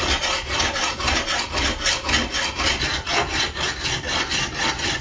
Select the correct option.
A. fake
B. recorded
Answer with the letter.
A